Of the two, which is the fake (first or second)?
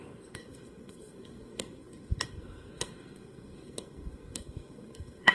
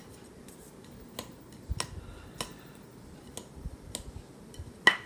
first